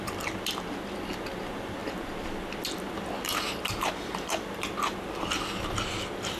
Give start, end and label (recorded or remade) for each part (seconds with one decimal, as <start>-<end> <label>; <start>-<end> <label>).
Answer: 0.0-6.4 recorded